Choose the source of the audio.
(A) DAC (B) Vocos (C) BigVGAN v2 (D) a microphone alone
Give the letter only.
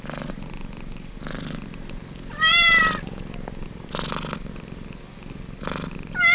D